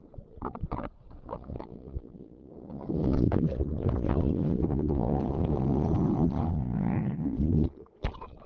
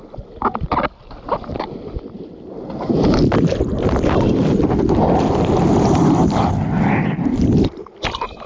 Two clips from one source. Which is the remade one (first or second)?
first